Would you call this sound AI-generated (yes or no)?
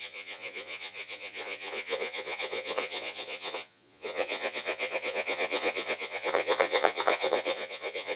yes